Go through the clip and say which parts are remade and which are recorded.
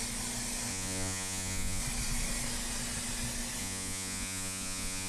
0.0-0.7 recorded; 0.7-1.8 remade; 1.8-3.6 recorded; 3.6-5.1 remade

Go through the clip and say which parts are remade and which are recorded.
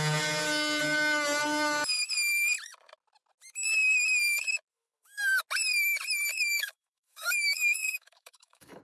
0.0-4.7 recorded; 4.7-5.4 remade; 5.4-6.3 recorded; 6.3-8.8 remade